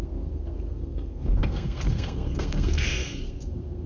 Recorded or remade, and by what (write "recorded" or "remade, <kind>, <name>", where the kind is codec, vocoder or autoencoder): remade, codec, SNAC